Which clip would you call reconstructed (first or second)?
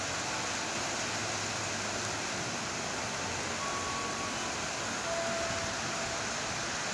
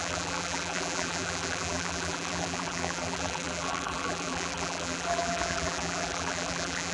second